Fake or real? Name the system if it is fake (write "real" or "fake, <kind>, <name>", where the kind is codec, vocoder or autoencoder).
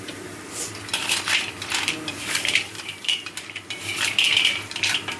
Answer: fake, vocoder, BigVGAN v2